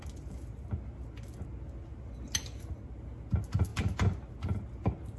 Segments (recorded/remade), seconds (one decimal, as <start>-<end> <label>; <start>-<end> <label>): 0.0-3.7 recorded; 3.7-4.3 remade; 4.3-5.2 recorded